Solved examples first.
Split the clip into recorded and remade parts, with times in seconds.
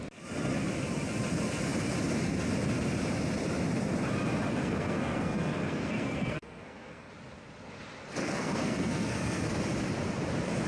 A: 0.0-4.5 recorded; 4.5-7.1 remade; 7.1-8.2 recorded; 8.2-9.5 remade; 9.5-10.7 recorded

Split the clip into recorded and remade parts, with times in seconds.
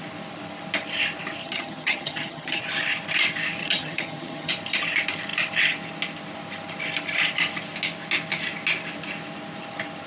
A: 0.0-1.4 recorded; 1.4-2.6 remade; 2.6-3.6 recorded; 3.6-4.5 remade; 4.5-10.1 recorded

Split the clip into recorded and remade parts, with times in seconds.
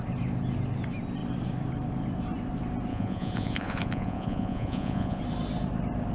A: 0.0-2.9 recorded; 2.9-5.2 remade; 5.2-6.1 recorded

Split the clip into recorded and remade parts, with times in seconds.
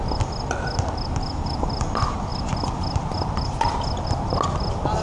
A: 0.0-5.0 recorded